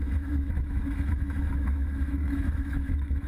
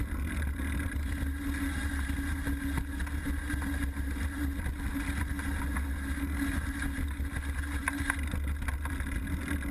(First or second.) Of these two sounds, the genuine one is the second